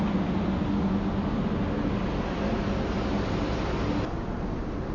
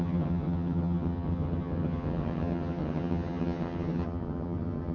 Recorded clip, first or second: first